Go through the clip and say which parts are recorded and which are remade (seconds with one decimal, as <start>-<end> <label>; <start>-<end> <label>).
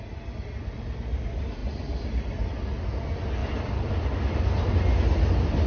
0.0-1.6 recorded; 1.6-2.6 remade; 2.6-3.4 recorded; 3.4-4.7 remade; 4.7-5.7 recorded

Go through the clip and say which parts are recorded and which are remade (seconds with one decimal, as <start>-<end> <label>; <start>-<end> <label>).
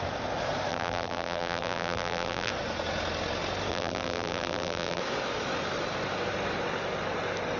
0.0-0.7 recorded; 0.7-2.5 remade; 2.5-3.7 recorded; 3.7-5.0 remade; 5.0-7.6 recorded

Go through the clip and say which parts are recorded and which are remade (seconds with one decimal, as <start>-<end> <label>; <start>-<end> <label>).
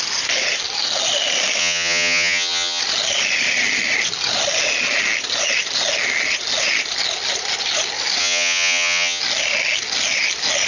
0.0-1.6 recorded; 1.6-2.8 remade; 2.8-8.2 recorded; 8.2-9.2 remade; 9.2-10.7 recorded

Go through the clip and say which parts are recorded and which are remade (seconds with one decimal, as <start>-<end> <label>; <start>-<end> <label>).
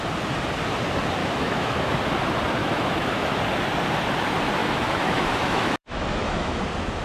0.0-1.2 recorded; 1.2-2.0 remade; 2.0-2.6 recorded; 2.6-3.4 remade; 3.4-4.6 recorded; 4.6-6.6 remade; 6.6-7.0 recorded